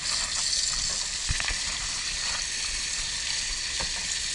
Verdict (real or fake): real